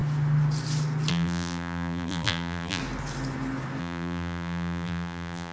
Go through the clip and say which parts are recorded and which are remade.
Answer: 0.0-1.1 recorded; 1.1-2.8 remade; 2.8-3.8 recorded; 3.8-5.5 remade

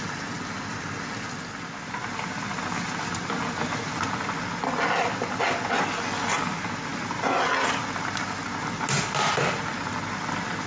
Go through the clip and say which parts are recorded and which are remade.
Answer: 0.0-10.7 recorded

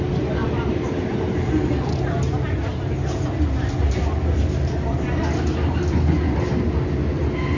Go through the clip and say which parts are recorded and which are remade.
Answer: 0.0-0.4 recorded; 0.4-1.6 remade; 1.6-7.6 recorded

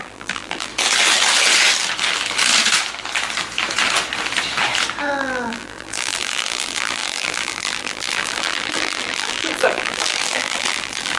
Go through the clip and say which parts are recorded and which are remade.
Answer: 0.0-0.7 remade; 0.7-5.1 recorded; 5.1-11.2 remade

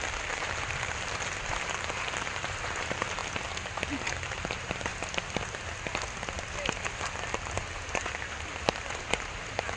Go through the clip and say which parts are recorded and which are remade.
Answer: 0.0-3.2 remade; 3.2-4.1 recorded; 4.1-4.9 remade; 4.9-7.7 recorded; 7.7-9.8 remade

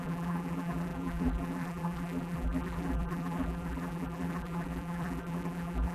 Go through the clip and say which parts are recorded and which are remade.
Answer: 0.0-5.9 remade

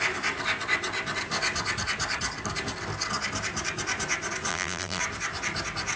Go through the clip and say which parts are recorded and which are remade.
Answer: 0.0-4.5 recorded; 4.5-5.0 remade; 5.0-6.0 recorded